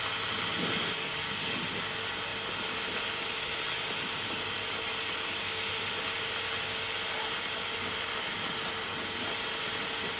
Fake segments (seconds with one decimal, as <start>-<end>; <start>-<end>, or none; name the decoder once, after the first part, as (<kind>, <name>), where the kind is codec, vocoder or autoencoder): none